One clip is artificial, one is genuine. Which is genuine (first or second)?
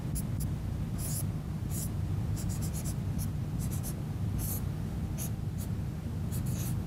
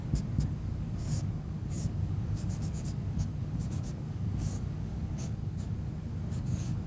first